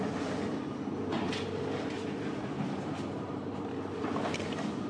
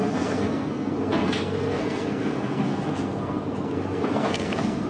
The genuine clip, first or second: first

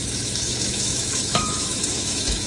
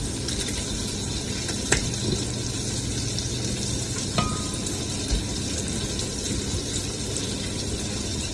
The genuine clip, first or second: second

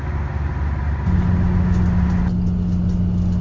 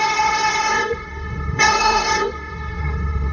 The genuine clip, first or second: first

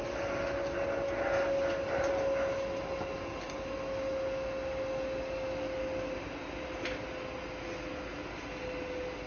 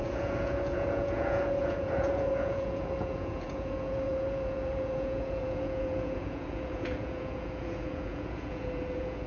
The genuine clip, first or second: first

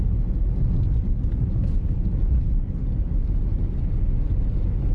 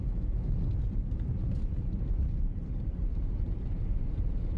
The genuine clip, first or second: first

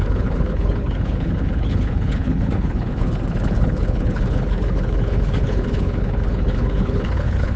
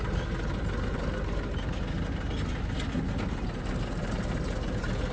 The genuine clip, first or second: second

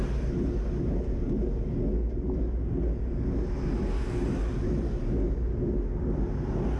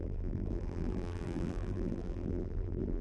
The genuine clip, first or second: first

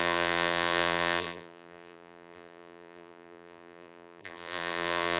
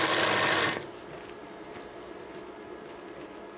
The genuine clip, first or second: second